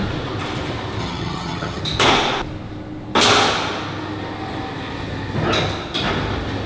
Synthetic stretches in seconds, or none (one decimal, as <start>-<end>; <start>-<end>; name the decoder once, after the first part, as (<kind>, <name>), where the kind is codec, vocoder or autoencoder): 1.0-1.8 (vocoder, HiFi-GAN)